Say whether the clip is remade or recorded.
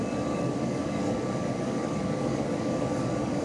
remade